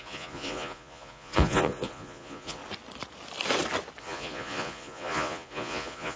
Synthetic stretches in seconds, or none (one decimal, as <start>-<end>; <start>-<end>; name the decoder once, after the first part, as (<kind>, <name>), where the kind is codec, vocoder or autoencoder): 0.0-2.6 (vocoder, Vocos); 4.0-6.2